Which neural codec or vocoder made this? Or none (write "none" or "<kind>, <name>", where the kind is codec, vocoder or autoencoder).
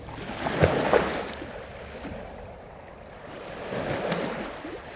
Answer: none